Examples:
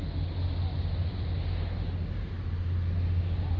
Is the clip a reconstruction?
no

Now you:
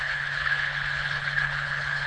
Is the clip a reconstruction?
yes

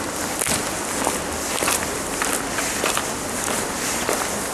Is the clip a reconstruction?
no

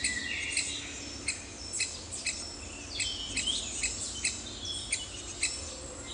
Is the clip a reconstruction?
no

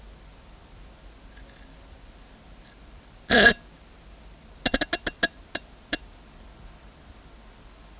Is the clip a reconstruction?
no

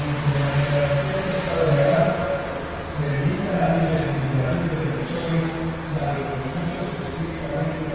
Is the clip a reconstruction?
no